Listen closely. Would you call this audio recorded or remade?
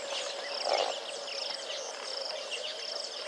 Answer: remade